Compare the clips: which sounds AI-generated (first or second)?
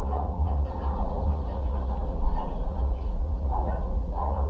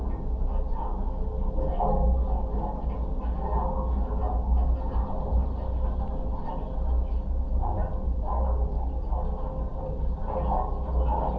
first